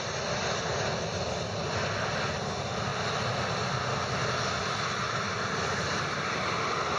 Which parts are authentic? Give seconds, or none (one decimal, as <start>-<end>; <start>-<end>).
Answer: 0.0-7.0